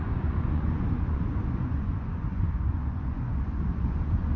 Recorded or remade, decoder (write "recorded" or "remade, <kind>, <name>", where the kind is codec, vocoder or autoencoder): remade, vocoder, Vocos